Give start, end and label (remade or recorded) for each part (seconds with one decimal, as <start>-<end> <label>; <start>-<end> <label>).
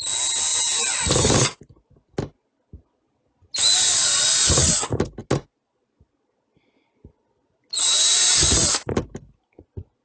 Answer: 0.0-10.0 recorded